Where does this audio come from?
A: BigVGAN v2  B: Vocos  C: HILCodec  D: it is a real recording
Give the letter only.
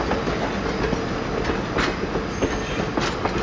D